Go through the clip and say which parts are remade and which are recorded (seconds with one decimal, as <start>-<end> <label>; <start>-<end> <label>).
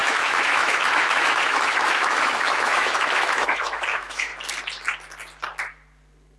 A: 0.0-4.3 remade; 4.3-6.4 recorded